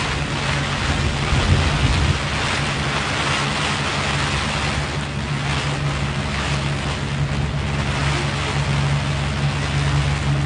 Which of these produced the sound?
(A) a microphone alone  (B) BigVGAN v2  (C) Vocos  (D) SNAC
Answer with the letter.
A